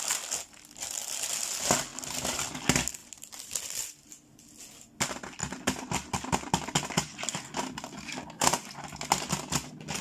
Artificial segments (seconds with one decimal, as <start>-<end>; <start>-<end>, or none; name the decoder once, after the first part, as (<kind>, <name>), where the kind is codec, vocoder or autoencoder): 1.9-2.6 (vocoder, BigVGAN v2); 3.0-3.6; 5.4-7.3